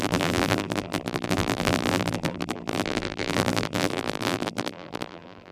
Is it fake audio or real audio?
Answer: fake